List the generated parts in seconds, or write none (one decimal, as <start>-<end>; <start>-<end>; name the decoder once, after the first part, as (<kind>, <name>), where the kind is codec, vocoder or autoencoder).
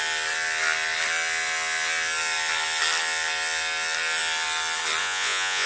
5.0-5.7 (vocoder, Vocos)